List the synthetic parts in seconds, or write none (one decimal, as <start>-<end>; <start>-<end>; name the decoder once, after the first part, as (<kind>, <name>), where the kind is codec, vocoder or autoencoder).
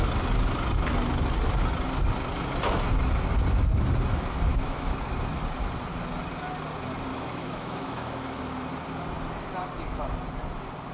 4.5-5.0 (autoencoder, DAC-VAE); 7.1-8.4